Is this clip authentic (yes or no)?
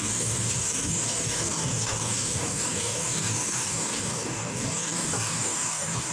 no